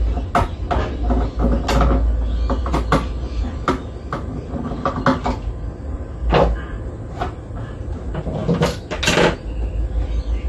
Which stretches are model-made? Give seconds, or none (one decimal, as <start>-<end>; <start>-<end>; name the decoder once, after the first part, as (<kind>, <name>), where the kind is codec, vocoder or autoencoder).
2.6-3.7 (vocoder, BigVGAN v2)